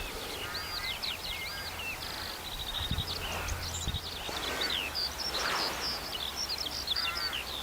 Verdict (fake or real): real